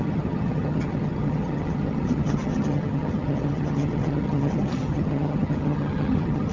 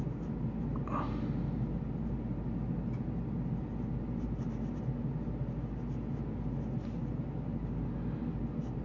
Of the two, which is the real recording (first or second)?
second